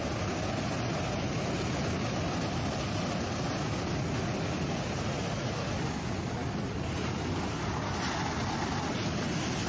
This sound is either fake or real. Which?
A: real